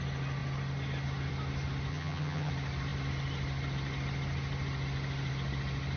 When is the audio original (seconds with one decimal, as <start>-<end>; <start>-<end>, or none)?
0.0-1.9; 2.5-6.0